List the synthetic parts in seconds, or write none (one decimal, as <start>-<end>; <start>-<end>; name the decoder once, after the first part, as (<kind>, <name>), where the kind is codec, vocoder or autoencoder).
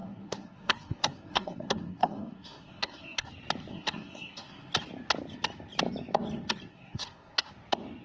0.0-3.3 (codec, SNAC); 3.7-4.7; 6.7-7.5